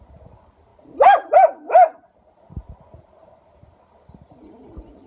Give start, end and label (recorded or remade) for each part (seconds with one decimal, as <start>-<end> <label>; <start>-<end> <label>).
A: 0.0-0.7 remade; 0.7-2.8 recorded; 2.8-5.1 remade